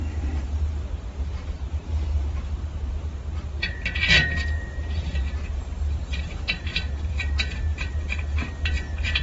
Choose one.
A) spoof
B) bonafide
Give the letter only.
A